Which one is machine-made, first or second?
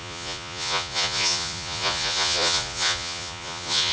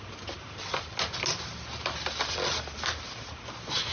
first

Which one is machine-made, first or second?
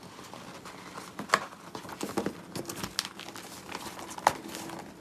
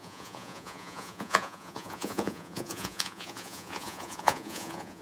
second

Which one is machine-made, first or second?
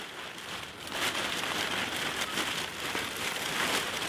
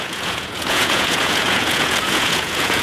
second